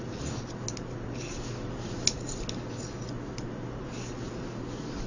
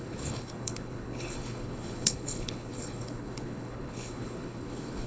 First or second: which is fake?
second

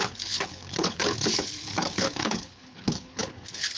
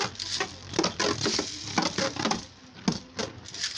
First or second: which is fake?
first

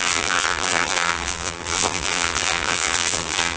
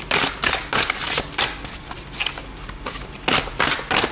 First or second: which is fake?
first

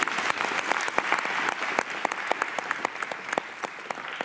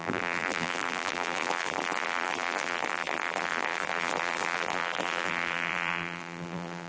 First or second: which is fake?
second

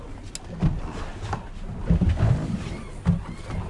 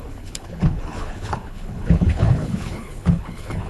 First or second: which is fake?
second